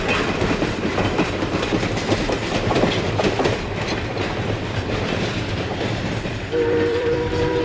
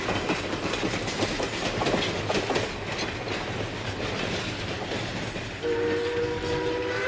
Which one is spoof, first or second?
first